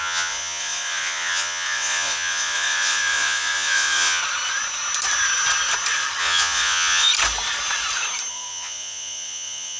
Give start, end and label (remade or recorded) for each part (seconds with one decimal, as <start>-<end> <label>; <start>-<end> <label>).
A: 0.0-4.2 remade; 4.2-6.2 recorded; 6.2-7.1 remade; 7.1-8.3 recorded; 8.3-9.8 remade

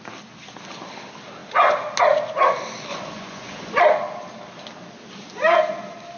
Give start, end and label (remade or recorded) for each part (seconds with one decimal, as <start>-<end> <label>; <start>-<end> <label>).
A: 0.0-2.9 recorded; 2.9-3.8 remade; 3.8-6.2 recorded

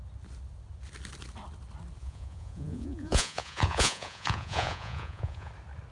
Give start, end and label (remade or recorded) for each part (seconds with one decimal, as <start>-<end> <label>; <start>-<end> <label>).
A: 0.0-2.0 recorded; 2.0-5.5 remade; 5.5-5.9 recorded

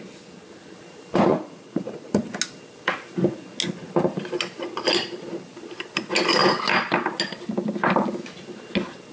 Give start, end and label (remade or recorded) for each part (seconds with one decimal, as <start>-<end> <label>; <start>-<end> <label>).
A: 0.0-1.3 recorded; 1.3-2.2 remade; 2.2-9.1 recorded